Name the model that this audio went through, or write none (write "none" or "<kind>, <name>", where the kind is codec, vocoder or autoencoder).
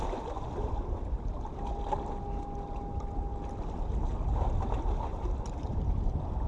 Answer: none